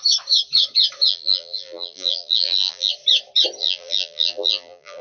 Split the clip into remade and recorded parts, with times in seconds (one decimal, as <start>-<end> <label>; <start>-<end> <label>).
0.0-1.1 recorded; 1.1-2.9 remade; 2.9-3.6 recorded; 3.6-5.0 remade